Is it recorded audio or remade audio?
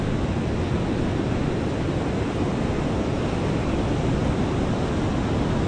recorded